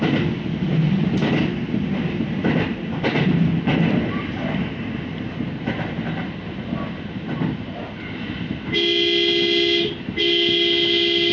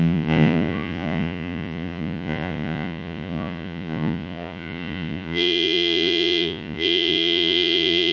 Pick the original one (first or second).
first